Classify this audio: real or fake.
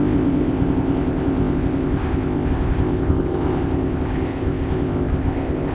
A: fake